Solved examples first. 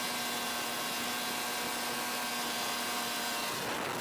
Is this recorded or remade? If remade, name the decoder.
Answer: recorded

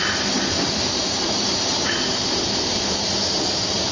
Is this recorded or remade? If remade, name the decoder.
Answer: recorded